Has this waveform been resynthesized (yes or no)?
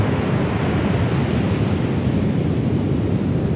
no